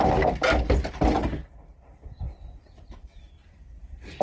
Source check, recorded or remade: recorded